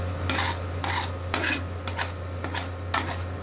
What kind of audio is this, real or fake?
real